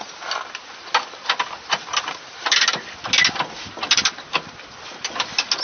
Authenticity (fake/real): real